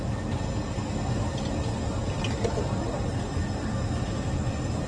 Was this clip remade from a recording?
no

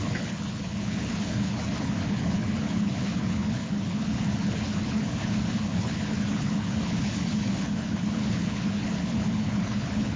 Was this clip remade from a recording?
yes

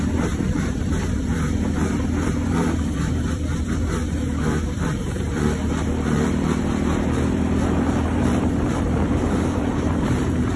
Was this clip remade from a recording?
yes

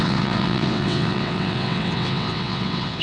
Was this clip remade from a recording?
yes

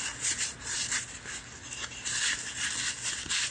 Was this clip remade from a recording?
no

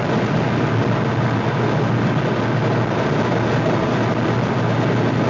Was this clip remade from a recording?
no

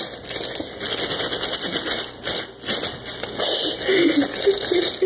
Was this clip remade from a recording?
no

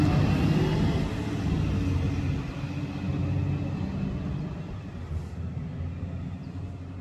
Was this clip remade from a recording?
no